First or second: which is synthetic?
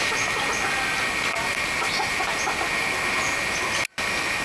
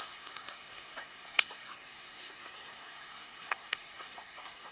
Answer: second